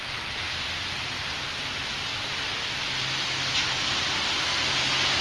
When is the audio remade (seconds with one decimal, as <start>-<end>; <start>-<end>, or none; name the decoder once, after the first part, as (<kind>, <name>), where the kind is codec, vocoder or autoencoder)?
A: none